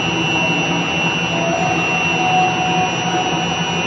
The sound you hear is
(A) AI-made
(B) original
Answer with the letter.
B